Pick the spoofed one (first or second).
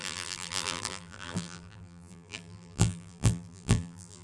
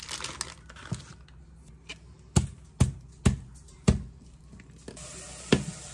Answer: first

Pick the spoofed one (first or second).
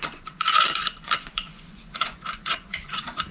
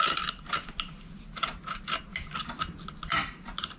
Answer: first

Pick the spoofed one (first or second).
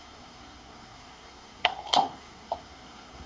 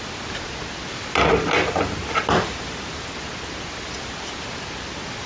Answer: first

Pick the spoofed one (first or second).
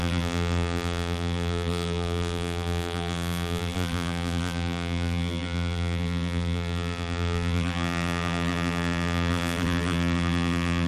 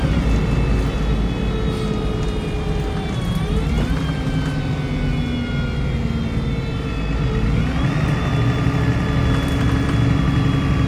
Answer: first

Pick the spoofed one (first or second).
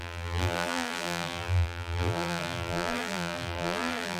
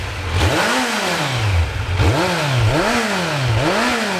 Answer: first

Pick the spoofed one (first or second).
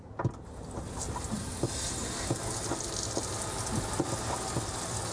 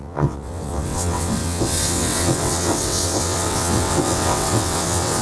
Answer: second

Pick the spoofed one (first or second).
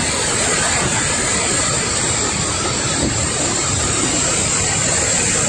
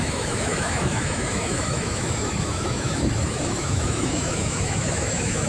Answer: second